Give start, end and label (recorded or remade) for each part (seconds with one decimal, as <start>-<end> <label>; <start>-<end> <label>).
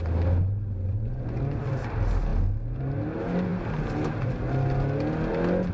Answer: 0.0-0.8 recorded; 0.8-1.4 remade; 1.4-5.7 recorded